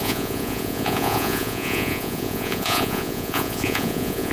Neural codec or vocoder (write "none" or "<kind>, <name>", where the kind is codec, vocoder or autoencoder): vocoder, Vocos